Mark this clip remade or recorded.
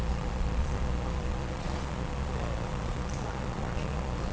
remade